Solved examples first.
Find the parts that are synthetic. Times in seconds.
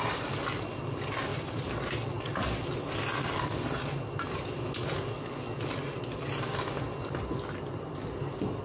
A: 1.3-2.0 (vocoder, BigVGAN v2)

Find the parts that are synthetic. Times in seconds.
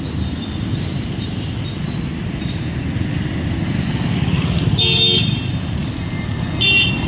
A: none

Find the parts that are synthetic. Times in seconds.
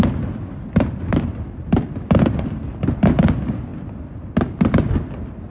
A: none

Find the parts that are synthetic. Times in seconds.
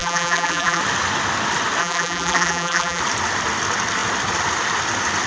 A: 0.0-0.8 (vocoder, BigVGAN v2); 1.8-3.0